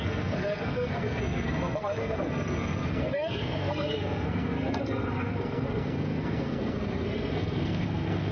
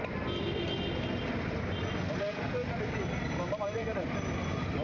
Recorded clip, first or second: second